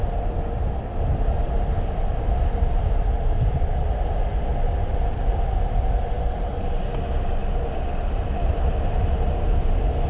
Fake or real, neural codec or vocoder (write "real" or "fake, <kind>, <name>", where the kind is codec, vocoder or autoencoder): real